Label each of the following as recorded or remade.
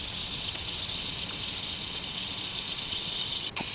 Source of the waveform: remade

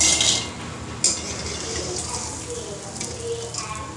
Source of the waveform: recorded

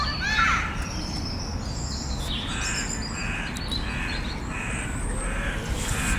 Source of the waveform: recorded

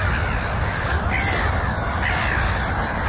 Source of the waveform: recorded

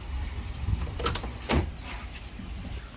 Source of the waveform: recorded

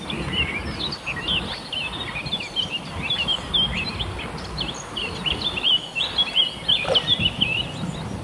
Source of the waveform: recorded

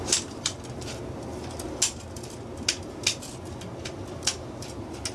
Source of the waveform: recorded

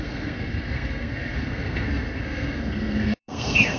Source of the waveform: remade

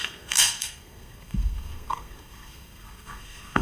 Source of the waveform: remade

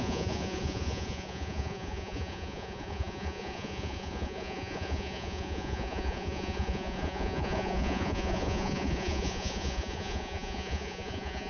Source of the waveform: remade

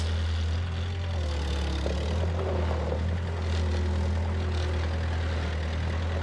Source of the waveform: recorded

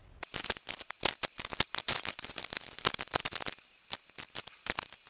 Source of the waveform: recorded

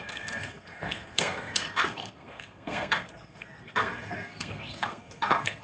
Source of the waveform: remade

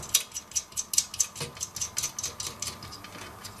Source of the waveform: recorded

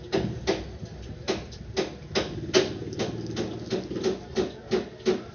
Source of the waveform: recorded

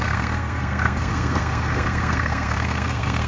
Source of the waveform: remade